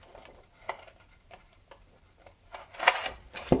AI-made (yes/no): no